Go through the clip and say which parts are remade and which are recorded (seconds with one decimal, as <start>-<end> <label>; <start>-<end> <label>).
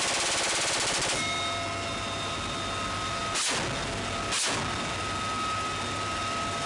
0.0-6.7 recorded